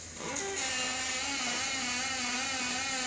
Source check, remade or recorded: recorded